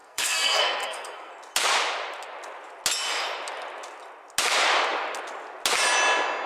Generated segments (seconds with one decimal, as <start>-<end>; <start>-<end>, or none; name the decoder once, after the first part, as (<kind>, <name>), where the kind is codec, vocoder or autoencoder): 0.0-1.3 (codec, SNAC)